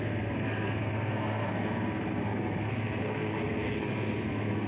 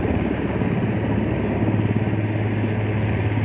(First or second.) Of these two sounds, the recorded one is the second